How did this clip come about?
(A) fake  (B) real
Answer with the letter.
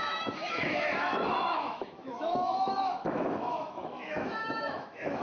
A